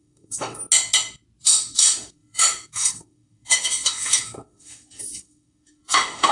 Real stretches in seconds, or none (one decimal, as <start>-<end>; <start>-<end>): 0.6-1.4